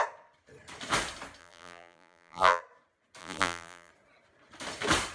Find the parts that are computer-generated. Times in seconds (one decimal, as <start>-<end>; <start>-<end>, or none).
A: 1.4-2.6; 3.2-3.9